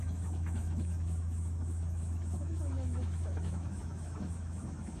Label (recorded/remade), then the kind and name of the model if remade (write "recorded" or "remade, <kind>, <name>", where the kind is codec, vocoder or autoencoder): remade, autoencoder, DAC-VAE